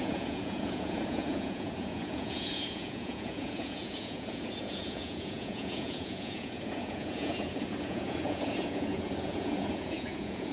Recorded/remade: remade